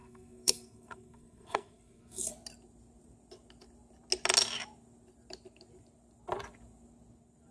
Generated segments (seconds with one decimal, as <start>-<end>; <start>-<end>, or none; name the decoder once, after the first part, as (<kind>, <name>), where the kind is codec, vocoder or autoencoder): 0.0-2.3 (codec, SNAC)